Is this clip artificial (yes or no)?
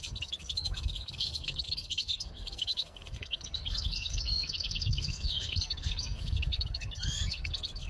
yes